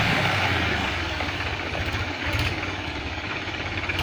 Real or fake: fake